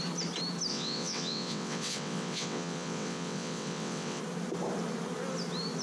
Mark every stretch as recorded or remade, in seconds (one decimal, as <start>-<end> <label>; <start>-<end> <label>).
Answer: 0.0-0.7 recorded; 0.7-4.2 remade; 4.2-5.8 recorded